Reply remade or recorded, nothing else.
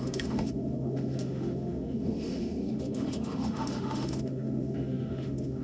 remade